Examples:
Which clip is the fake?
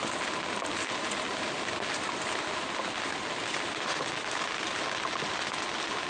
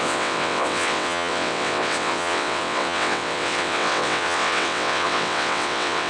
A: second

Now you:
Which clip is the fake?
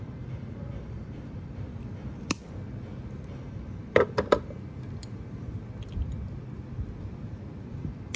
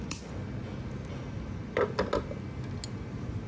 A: first